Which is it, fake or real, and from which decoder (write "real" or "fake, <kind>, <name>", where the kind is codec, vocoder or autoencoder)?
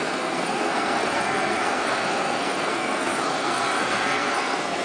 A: fake, codec, SNAC